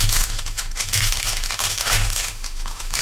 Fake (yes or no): yes